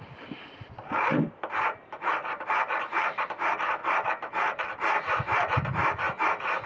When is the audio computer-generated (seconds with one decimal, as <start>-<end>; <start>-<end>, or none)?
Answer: 3.8-6.0